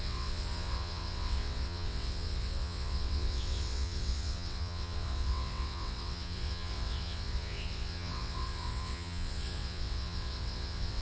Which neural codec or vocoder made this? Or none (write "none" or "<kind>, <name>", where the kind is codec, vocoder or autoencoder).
vocoder, WaveNeXt